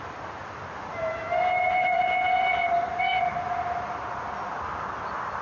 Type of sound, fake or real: real